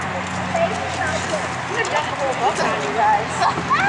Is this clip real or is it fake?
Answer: real